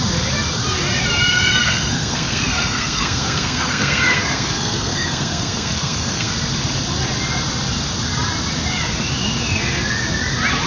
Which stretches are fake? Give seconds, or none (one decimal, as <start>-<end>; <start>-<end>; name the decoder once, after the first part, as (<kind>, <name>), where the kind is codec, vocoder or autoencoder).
1.3-6.3 (codec, SNAC)